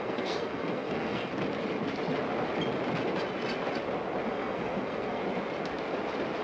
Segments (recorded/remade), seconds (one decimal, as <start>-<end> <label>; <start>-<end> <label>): 0.0-1.3 remade; 1.3-4.3 recorded; 4.3-5.2 remade; 5.2-6.4 recorded